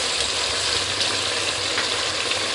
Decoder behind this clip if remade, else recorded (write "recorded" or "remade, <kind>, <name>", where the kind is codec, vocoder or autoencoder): recorded